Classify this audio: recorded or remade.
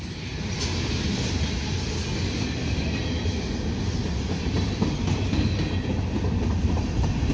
recorded